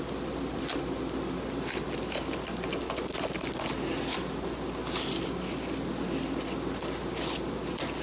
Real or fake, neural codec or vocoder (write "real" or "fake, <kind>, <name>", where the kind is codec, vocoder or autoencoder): real